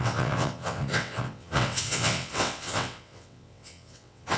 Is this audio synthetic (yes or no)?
yes